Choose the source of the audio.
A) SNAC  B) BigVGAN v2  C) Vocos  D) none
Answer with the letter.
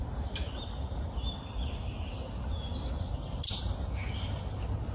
D